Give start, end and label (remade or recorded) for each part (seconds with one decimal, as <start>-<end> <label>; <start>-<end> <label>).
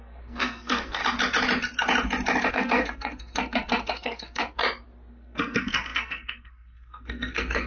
0.0-1.0 remade; 1.0-2.5 recorded; 2.5-4.6 remade; 4.6-5.1 recorded; 5.1-7.7 remade